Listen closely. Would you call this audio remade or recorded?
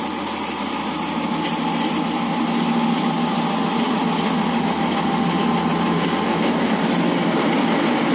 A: recorded